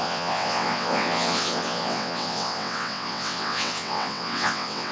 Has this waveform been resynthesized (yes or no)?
yes